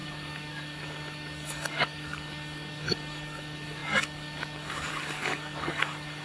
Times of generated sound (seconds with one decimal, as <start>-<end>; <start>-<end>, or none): 0.0-6.2